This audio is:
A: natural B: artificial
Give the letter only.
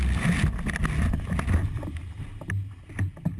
A